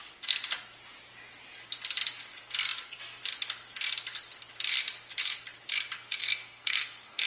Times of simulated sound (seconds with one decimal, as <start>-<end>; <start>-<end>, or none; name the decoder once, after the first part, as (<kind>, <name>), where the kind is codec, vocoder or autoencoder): 6.2-7.3 (codec, SNAC)